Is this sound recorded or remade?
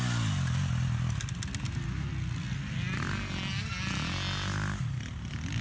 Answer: recorded